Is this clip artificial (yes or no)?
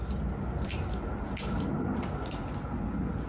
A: no